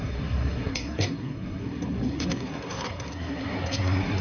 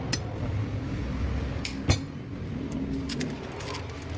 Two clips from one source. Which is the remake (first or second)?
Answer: first